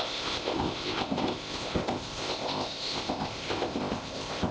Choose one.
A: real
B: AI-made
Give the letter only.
B